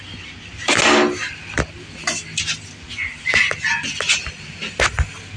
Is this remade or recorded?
recorded